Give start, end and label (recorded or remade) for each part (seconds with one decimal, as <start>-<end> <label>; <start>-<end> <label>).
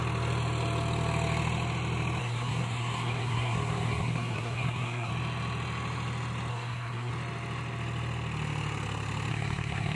0.0-2.2 recorded; 2.2-5.1 remade; 5.1-6.5 recorded; 6.5-7.1 remade; 7.1-9.3 recorded; 9.3-10.0 remade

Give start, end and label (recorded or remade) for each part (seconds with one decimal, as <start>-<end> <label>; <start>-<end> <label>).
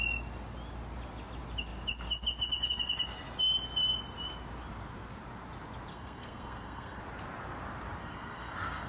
0.0-5.9 recorded; 5.9-7.0 remade; 7.0-8.0 recorded; 8.0-8.9 remade